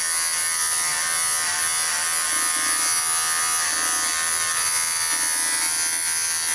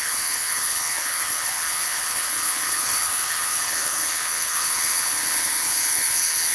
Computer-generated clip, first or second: second